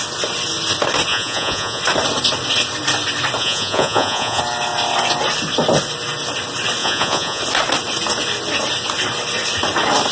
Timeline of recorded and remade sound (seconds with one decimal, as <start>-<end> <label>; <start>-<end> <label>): 0.0-1.1 recorded; 1.1-1.8 remade; 1.8-3.4 recorded; 3.4-4.4 remade; 4.4-6.8 recorded; 6.8-7.4 remade; 7.4-10.1 recorded